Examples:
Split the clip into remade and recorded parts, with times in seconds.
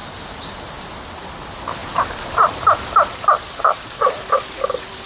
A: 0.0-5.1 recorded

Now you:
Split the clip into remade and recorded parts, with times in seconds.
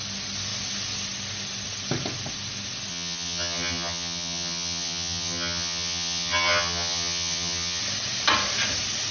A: 0.0-2.9 recorded; 2.9-7.8 remade; 7.8-9.1 recorded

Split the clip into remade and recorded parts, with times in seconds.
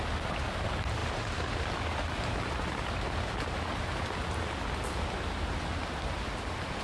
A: 0.0-6.8 recorded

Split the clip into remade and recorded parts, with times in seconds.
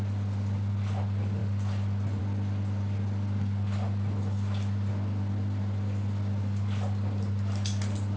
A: 0.0-8.2 recorded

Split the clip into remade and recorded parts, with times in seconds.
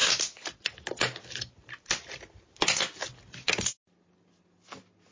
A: 0.0-5.1 recorded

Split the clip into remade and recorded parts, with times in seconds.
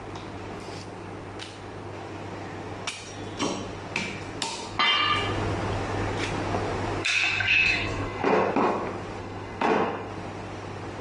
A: 0.0-7.0 recorded; 7.0-8.5 remade; 8.5-9.2 recorded; 9.2-10.1 remade; 10.1-11.0 recorded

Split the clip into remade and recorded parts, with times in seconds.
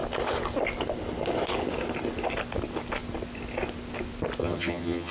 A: 0.0-4.4 recorded; 4.4-5.1 remade